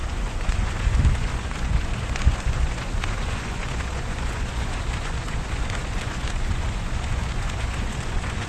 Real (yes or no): no